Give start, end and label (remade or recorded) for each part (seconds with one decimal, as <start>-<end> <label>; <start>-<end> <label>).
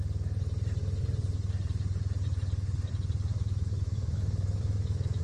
0.0-3.3 recorded; 3.3-5.2 remade